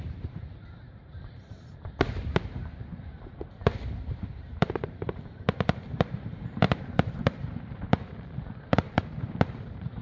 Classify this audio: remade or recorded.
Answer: remade